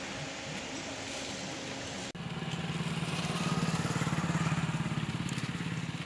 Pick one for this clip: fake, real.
real